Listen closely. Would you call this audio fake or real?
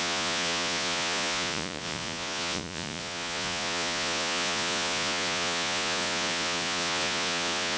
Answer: fake